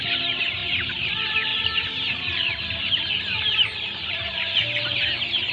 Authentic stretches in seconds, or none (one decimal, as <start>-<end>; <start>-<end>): none